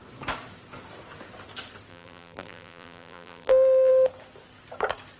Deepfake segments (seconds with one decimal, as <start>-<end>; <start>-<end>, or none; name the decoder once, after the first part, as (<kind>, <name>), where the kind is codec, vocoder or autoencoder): 1.9-3.9 (vocoder, BigVGAN v2)